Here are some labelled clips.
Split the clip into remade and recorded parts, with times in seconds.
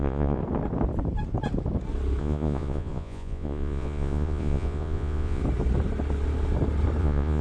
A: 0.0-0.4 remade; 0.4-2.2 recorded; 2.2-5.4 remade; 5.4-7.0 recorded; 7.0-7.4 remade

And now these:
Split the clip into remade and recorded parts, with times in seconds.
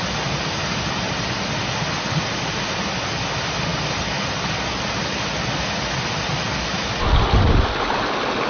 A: 0.0-8.5 recorded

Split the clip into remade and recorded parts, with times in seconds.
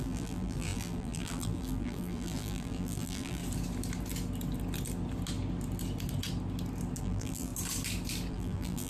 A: 0.0-3.4 remade; 3.4-7.0 recorded; 7.0-7.5 remade; 7.5-8.3 recorded; 8.3-8.9 remade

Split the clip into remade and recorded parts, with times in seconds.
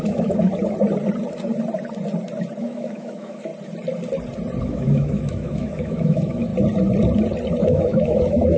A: 0.0-0.5 remade; 0.5-2.6 recorded; 2.6-3.5 remade; 3.5-4.6 recorded; 4.6-6.5 remade; 6.5-7.6 recorded; 7.6-8.6 remade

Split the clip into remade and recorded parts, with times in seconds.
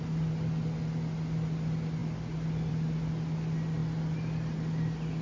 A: 0.0-5.2 recorded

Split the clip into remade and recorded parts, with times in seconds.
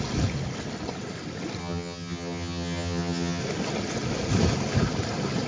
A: 0.0-1.6 recorded; 1.6-3.4 remade; 3.4-5.5 recorded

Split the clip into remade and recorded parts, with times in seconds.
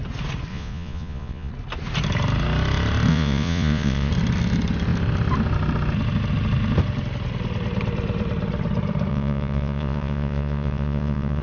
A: 0.0-0.5 recorded; 0.5-1.5 remade; 1.5-3.1 recorded; 3.1-4.1 remade; 4.1-9.1 recorded; 9.1-11.4 remade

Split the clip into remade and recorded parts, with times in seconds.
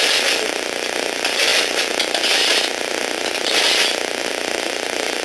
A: 0.0-5.2 recorded